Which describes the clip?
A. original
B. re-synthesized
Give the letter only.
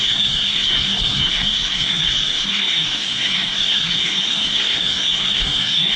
B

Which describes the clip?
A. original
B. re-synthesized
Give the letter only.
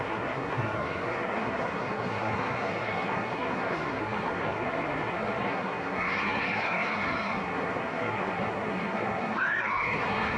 B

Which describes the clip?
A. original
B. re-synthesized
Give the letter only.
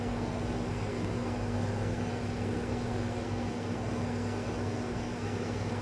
B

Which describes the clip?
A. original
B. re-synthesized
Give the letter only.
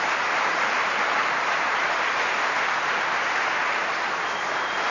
A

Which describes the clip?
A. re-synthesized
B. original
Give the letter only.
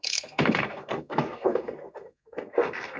A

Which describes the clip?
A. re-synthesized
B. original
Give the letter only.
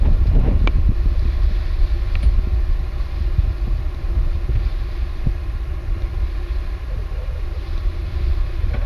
B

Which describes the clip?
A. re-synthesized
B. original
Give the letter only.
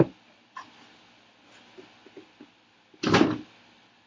B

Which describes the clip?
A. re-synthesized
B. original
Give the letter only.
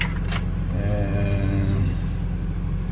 B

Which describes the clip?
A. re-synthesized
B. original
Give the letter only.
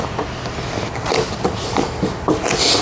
B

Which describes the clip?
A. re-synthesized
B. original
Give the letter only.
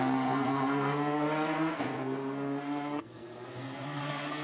A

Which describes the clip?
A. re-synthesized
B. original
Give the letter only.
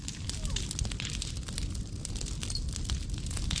B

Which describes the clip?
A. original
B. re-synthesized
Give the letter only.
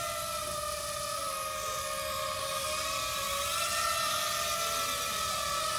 A